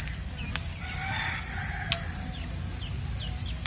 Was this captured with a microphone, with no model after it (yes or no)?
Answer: yes